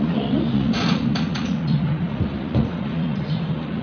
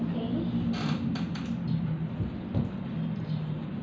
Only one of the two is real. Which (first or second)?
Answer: second